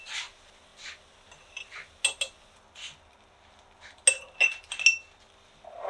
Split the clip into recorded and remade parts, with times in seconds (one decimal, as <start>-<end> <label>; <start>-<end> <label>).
0.0-5.9 recorded